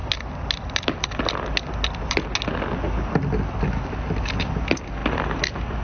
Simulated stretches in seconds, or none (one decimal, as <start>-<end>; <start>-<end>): none